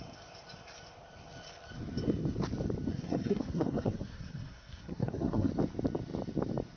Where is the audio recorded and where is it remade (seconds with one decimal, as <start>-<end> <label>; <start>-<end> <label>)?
0.0-2.9 recorded; 2.9-5.5 remade; 5.5-6.8 recorded